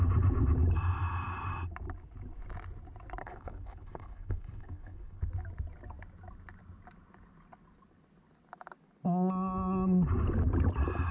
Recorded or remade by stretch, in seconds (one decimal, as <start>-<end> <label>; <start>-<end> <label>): 0.0-3.2 recorded; 3.2-5.2 remade; 5.2-11.1 recorded